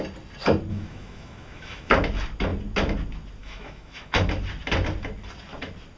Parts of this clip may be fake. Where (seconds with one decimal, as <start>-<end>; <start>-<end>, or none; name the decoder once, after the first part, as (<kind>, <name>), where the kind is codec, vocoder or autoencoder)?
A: 0.7-1.9 (autoencoder, DAC-VAE); 3.4-4.2